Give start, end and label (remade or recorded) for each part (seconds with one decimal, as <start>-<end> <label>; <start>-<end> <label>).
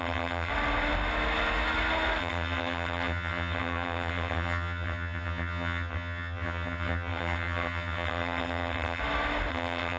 0.0-0.5 remade; 0.5-2.2 recorded; 2.2-9.0 remade; 9.0-9.5 recorded; 9.5-10.0 remade